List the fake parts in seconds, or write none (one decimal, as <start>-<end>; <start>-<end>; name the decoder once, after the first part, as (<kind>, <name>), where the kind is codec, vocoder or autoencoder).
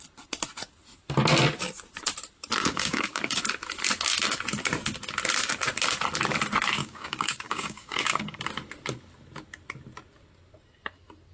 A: 2.6-3.4 (codec, DAC); 6.8-8.4